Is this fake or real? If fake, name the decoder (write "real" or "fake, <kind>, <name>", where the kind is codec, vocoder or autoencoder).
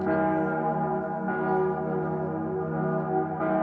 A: real